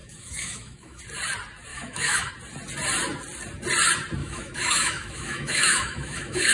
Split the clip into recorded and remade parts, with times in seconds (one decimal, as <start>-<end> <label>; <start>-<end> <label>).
0.0-1.0 remade; 1.0-1.7 recorded; 1.7-2.3 remade; 2.3-4.2 recorded; 4.2-6.5 remade